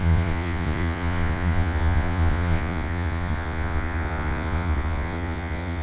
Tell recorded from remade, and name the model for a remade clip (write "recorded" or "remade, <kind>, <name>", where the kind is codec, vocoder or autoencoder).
remade, vocoder, Vocos